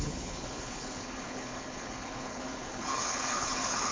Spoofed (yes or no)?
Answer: yes